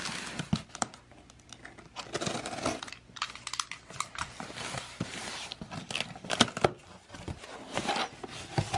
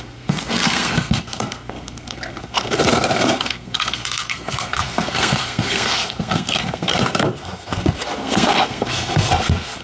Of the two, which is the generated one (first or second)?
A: second